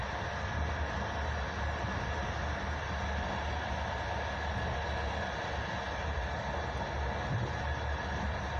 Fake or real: real